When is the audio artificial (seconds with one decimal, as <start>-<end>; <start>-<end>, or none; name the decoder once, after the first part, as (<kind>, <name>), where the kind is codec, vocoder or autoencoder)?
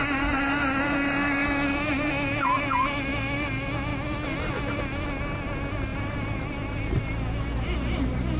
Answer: 5.9-7.0 (vocoder, BigVGAN v2)